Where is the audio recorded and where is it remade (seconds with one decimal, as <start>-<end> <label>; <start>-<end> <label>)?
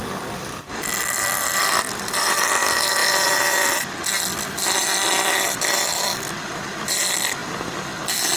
0.0-8.4 recorded